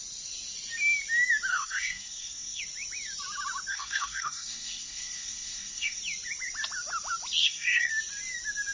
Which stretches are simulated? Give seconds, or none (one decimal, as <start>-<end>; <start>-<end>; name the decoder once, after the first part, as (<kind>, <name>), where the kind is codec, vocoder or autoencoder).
1.5-2.6 (codec, SNAC); 3.7-6.0; 7.4-7.9